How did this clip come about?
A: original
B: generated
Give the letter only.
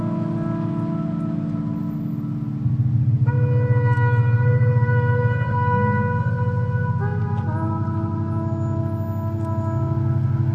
A